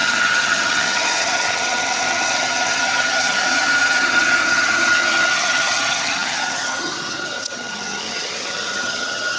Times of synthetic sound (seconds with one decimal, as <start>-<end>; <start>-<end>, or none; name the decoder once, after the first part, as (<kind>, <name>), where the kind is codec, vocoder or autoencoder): 0.0-9.4 (vocoder, HiFi-GAN)